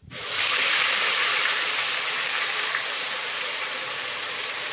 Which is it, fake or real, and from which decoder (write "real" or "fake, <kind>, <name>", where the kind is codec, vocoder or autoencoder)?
fake, vocoder, BigVGAN v2